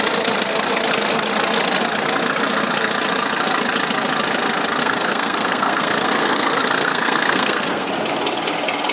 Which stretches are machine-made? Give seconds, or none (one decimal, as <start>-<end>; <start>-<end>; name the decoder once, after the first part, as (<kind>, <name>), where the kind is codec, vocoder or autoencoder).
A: 4.8-7.9 (codec, SNAC)